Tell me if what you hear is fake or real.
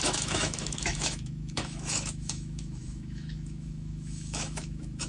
fake